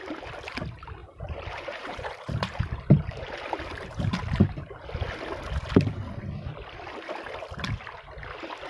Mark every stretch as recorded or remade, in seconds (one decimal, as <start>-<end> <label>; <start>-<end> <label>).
0.0-1.0 recorded; 1.0-4.4 remade; 4.4-8.7 recorded